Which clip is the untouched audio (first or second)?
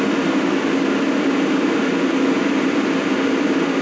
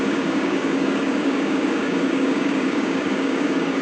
first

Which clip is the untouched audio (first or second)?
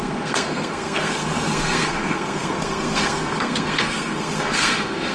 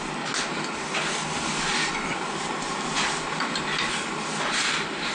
second